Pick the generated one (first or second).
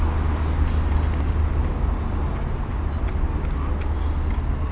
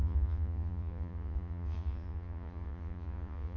second